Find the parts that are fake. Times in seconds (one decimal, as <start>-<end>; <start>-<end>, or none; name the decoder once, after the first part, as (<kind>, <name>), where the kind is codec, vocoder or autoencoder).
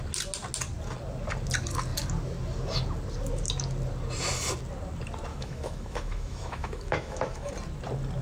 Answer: 5.3-7.5 (autoencoder, DAC-VAE)